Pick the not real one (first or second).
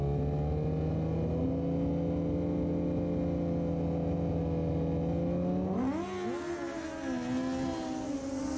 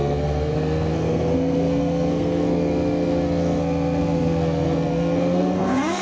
second